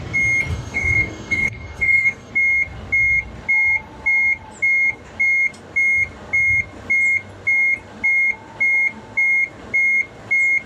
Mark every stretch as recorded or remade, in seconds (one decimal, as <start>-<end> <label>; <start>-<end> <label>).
0.0-0.5 recorded; 0.5-2.3 remade; 2.3-10.7 recorded